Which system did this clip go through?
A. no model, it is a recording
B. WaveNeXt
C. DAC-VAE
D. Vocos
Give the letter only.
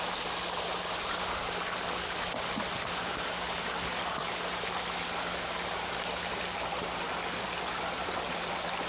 A